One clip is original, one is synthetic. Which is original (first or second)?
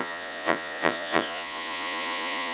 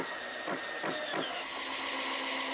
second